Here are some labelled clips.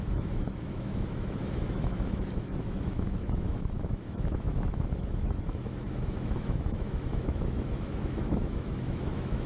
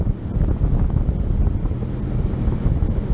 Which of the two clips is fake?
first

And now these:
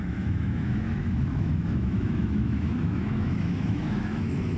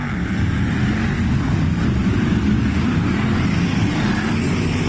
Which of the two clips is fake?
first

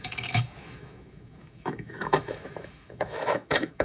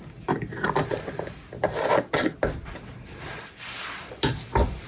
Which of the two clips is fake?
first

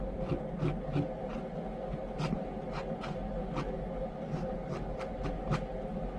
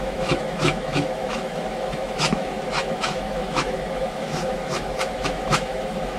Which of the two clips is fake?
second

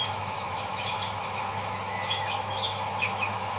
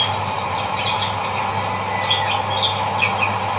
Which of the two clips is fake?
first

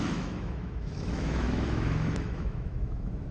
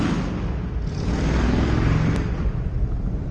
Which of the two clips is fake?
first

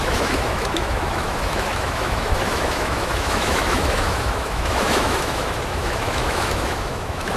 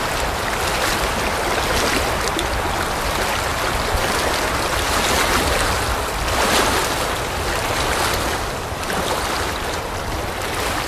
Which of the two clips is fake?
first